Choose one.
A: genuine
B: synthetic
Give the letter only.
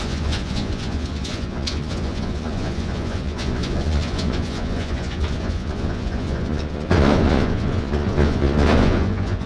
B